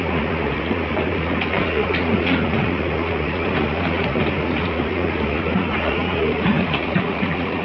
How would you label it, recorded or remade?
remade